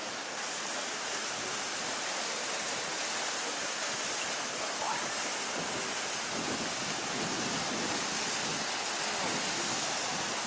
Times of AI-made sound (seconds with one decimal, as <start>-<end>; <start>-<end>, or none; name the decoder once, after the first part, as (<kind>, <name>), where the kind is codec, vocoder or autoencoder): 0.0-2.0 (vocoder, BigVGAN v2)

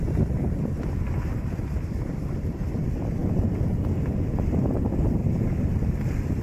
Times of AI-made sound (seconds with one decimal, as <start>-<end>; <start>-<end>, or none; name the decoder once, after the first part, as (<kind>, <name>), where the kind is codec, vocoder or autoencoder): 0.0-3.2 (vocoder, BigVGAN v2); 4.0-5.2